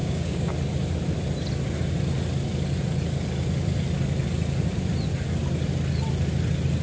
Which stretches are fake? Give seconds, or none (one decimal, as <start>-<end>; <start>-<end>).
0.0-0.5